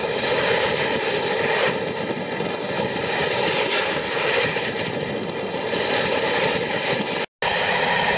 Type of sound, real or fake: real